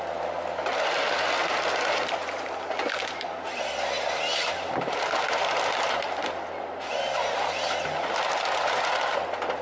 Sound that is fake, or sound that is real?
real